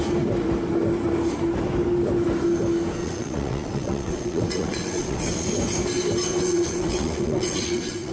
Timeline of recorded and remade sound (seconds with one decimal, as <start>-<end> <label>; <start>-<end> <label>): 0.0-3.0 recorded; 3.0-5.5 remade; 5.5-6.3 recorded; 6.3-8.1 remade